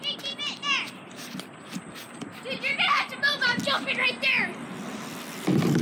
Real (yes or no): no